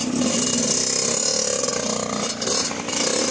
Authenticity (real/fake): real